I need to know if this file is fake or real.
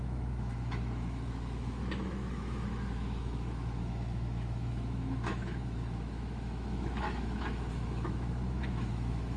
fake